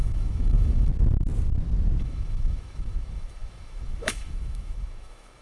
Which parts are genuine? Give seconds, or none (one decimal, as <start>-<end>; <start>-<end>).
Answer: 0.9-2.0

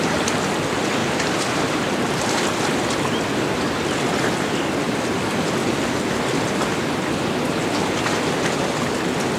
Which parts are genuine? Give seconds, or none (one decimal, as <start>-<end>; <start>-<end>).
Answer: 0.0-9.4

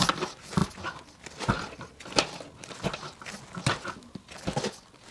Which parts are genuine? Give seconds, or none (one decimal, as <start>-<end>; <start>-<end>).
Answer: 0.0-5.1

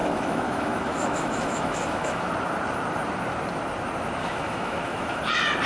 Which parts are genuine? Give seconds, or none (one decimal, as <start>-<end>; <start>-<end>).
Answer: 2.3-4.2; 5.2-5.7

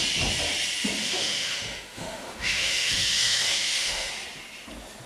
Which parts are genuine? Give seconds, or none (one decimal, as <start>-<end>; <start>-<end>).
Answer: 0.0-1.0; 4.1-5.1

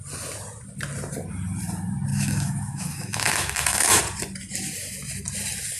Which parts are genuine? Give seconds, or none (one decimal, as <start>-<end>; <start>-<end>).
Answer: 0.0-2.1; 4.0-5.8